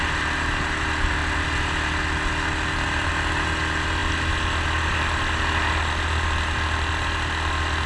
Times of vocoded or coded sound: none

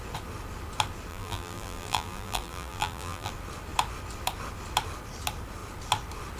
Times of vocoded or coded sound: 1.1-3.3 (vocoder, BigVGAN v2)

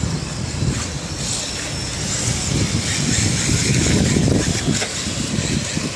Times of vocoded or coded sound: 3.6-4.1 (codec, DAC)

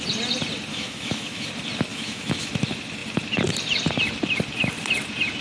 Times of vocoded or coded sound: 0.7-1.5 (autoencoder, DAC-VAE); 1.9-2.5

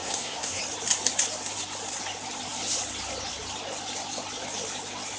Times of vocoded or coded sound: 0.0-0.6 (codec, SNAC)